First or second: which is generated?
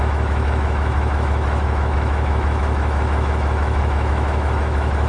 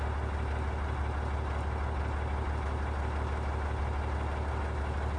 first